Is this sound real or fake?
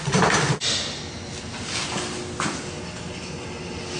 real